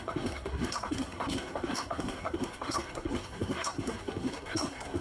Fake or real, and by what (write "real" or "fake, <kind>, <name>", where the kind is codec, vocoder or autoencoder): fake, codec, SNAC